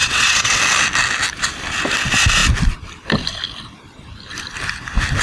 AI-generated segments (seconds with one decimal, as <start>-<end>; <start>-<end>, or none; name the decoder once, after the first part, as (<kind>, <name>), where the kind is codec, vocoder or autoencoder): 0.0-0.6 (vocoder, WaveNeXt)